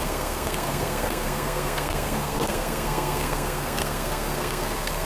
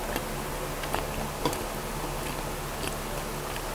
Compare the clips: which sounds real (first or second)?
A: second